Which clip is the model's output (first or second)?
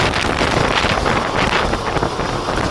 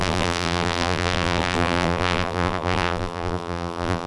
second